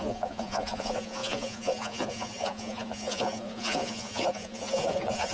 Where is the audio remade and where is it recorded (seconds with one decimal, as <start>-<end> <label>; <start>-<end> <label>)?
0.0-5.3 remade